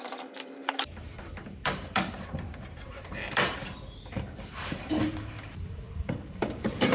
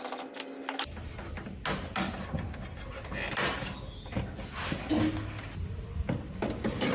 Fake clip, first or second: first